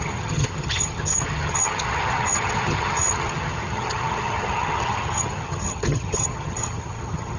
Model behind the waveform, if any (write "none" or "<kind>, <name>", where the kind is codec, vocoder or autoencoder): vocoder, HiFi-GAN